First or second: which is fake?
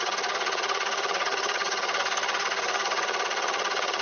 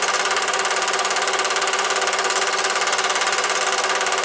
first